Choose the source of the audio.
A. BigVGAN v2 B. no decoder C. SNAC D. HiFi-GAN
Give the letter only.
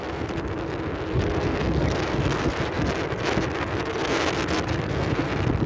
B